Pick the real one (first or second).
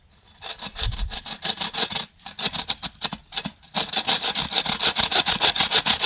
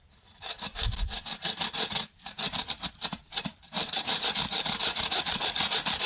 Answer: first